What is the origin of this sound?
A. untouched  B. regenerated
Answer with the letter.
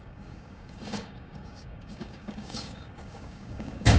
B